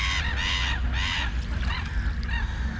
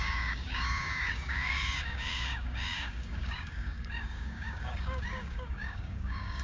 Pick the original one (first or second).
first